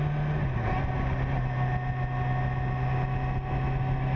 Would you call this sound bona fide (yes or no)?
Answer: yes